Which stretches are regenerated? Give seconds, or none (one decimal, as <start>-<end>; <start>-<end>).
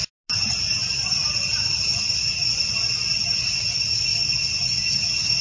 none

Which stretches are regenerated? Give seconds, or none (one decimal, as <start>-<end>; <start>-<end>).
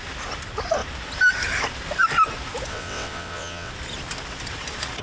2.7-3.7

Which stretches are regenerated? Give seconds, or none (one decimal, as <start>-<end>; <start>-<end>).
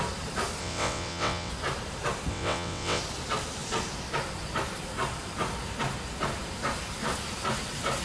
0.6-1.5; 2.3-3.0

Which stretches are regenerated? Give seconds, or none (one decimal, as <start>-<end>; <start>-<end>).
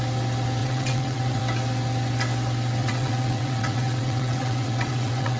0.6-1.4; 2.8-5.4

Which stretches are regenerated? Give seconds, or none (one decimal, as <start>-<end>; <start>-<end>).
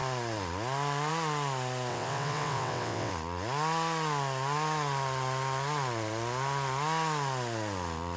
1.9-3.1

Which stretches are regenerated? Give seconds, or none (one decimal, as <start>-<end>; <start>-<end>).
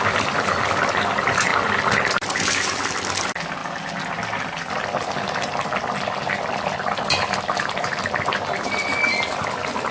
none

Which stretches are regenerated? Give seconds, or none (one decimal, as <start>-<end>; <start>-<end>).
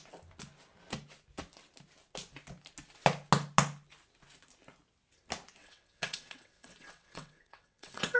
5.6-8.2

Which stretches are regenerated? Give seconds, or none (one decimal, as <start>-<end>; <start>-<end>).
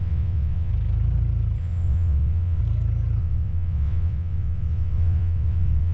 0.0-0.7; 1.6-2.6; 3.2-5.9